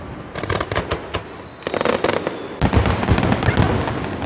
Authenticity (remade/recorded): recorded